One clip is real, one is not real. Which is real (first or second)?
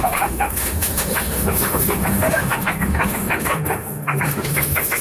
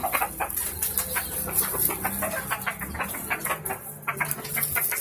second